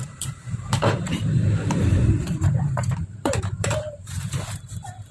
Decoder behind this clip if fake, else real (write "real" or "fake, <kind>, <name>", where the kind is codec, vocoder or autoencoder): fake, vocoder, BigVGAN v2